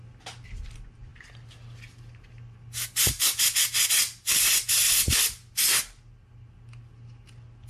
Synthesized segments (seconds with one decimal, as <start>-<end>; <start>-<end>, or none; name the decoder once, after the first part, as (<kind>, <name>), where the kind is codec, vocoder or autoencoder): none